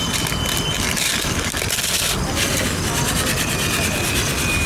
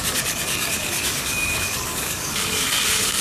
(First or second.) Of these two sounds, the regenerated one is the second